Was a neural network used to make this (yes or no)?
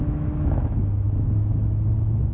yes